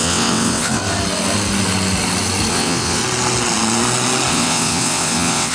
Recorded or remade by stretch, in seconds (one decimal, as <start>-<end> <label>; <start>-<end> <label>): 0.0-0.8 remade; 0.8-2.5 recorded; 2.5-3.0 remade; 3.0-4.3 recorded; 4.3-5.5 remade